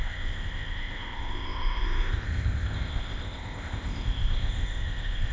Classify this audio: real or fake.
fake